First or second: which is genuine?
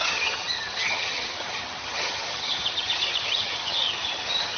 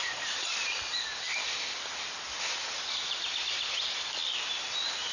second